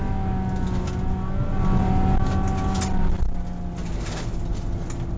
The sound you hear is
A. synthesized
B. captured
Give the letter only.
B